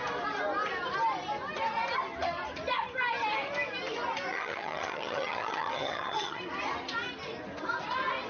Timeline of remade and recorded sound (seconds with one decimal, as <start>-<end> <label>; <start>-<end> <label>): 0.0-4.3 recorded; 4.3-6.4 remade; 6.4-8.3 recorded